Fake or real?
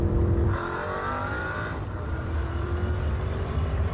fake